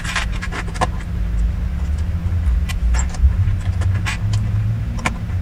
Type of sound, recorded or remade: remade